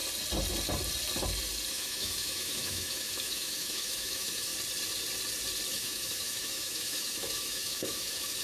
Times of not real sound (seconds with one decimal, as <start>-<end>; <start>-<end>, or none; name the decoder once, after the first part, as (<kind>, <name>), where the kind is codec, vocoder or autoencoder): 1.7-4.5 (autoencoder, DAC-VAE); 5.7-8.4